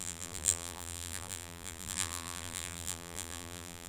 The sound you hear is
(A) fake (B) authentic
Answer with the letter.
A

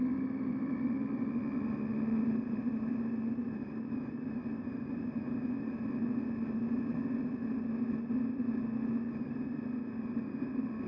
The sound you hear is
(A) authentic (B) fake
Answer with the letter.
B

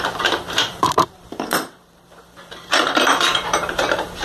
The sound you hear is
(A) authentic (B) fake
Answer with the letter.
B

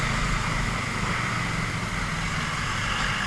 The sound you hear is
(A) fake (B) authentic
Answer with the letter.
B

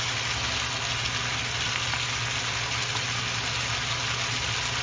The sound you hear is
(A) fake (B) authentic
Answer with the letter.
B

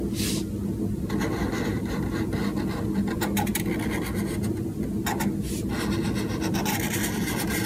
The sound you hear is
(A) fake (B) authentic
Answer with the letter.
B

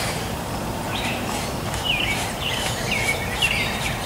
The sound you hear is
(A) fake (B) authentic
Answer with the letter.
A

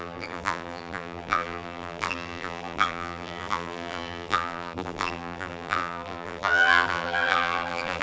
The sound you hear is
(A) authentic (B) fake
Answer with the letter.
B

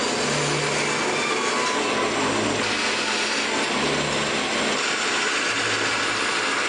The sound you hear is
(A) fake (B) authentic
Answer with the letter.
B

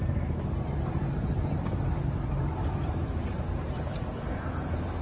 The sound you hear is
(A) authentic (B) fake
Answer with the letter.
B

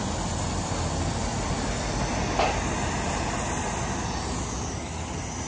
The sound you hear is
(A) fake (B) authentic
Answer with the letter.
B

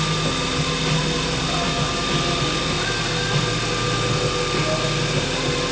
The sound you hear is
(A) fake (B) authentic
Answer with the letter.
B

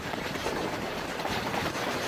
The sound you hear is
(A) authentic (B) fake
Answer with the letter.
B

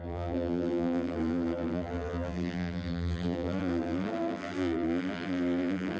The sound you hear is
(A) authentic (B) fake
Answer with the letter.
B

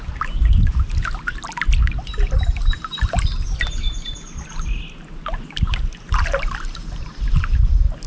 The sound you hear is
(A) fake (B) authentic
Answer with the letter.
B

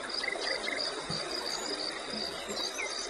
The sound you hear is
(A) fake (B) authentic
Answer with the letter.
B